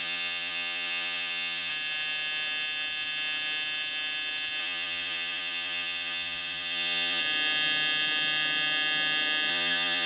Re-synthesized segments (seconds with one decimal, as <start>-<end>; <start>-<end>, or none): 0.0-1.7; 4.6-7.2; 9.5-10.1